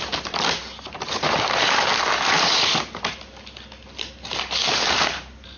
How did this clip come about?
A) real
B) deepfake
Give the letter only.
A